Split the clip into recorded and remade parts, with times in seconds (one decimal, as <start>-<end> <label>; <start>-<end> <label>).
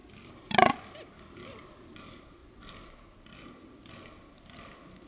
0.0-2.4 recorded; 2.4-3.9 remade; 3.9-5.1 recorded